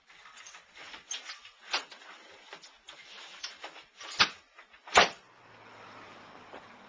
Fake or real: real